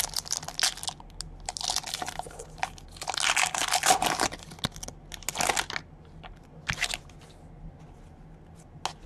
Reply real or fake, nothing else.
real